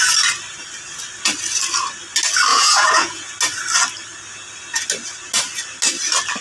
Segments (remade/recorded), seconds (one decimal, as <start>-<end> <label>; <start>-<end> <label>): 0.0-2.5 recorded; 2.5-3.3 remade; 3.3-6.4 recorded